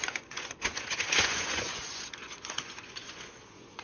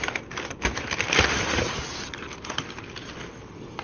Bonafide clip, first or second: second